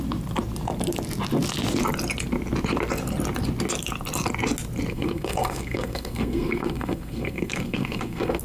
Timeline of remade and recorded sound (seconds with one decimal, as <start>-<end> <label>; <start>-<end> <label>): 0.0-4.9 recorded; 4.9-8.4 remade